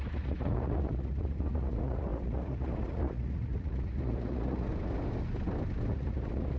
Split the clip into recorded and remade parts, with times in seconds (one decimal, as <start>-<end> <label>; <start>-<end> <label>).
0.0-4.7 remade; 4.7-5.9 recorded; 5.9-6.6 remade